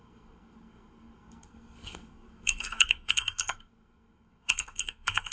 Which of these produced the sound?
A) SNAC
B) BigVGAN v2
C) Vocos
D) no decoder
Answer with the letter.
A